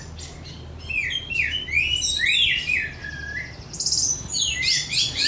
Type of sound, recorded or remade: recorded